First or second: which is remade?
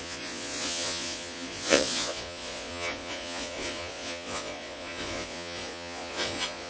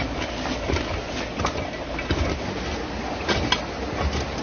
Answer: first